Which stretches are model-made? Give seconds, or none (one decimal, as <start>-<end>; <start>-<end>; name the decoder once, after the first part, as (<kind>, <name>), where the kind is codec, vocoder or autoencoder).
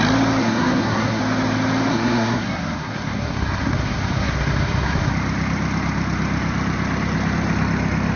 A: 0.4-1.2 (codec, SNAC); 1.9-5.1